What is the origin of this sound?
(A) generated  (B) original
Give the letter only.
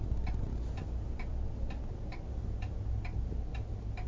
B